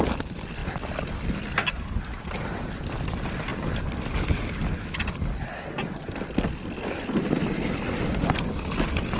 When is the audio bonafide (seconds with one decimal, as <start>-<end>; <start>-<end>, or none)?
0.0-9.2